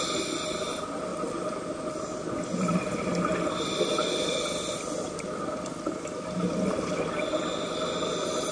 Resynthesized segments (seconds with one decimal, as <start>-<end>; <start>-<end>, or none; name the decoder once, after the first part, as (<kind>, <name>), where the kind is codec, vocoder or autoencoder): none